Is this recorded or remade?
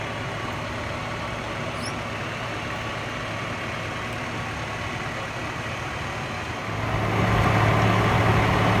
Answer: recorded